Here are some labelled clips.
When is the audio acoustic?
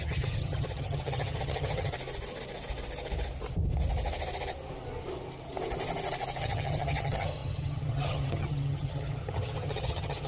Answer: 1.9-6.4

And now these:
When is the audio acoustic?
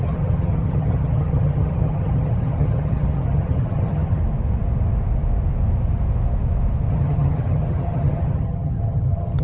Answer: 4.2-6.9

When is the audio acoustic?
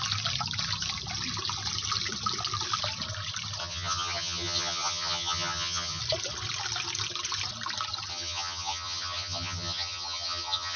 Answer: 0.0-3.6; 6.0-8.1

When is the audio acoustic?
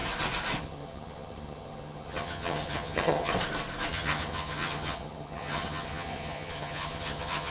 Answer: 0.0-0.6; 3.3-3.9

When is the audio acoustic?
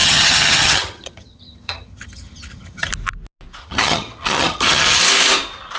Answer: 2.9-3.6; 5.0-5.8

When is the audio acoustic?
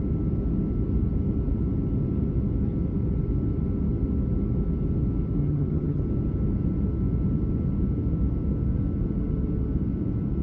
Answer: 0.0-5.4; 6.0-10.4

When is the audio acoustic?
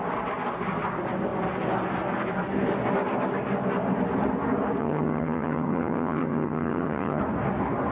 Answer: 0.0-4.8; 7.2-7.9